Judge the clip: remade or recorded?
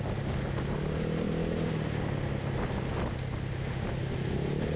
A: recorded